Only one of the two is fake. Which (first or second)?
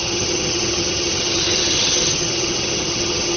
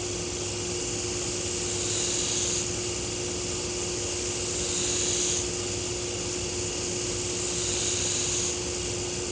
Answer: first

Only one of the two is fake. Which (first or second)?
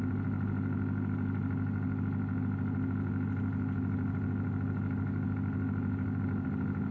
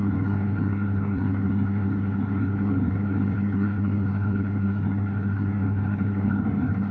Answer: second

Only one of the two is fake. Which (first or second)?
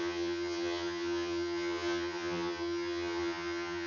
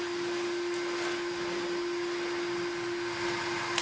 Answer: first